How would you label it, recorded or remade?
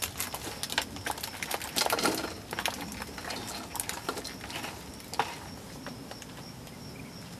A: recorded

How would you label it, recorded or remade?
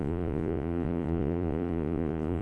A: remade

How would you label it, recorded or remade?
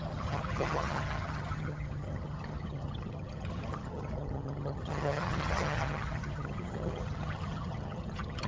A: remade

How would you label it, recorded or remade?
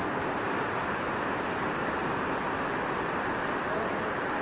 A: recorded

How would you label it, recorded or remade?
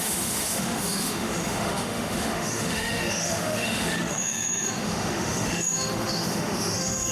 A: remade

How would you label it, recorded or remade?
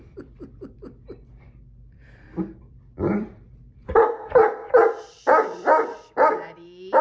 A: remade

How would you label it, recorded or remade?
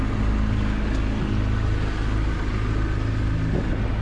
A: recorded